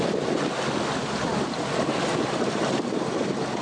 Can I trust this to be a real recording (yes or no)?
yes